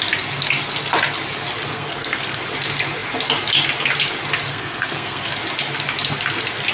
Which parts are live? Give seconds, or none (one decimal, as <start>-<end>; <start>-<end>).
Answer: 0.0-1.7; 2.4-4.5; 5.3-6.7